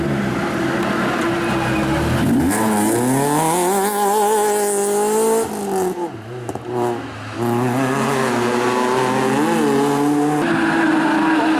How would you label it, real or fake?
real